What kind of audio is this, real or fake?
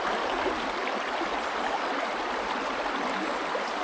real